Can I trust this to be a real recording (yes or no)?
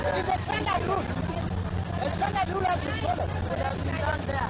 yes